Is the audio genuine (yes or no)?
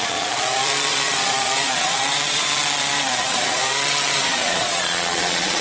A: no